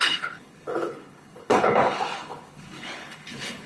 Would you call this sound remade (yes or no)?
yes